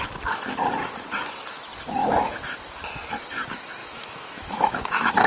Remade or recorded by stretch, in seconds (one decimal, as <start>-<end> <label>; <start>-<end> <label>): 0.0-2.0 recorded; 2.0-2.8 remade; 2.8-3.8 recorded; 3.8-5.3 remade